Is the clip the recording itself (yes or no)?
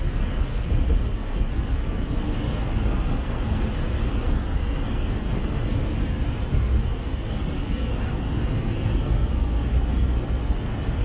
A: no